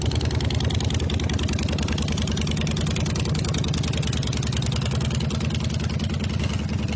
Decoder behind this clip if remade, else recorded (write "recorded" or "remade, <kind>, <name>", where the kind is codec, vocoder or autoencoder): recorded